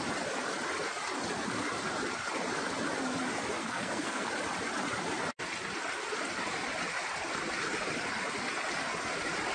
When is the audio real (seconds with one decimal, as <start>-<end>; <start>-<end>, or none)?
0.0-3.6; 4.3-9.5